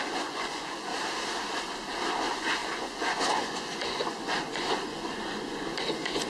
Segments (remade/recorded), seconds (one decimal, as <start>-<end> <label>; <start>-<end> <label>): 0.0-0.9 remade; 0.9-2.1 recorded; 2.1-6.3 remade